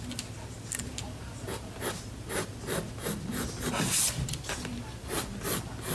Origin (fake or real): real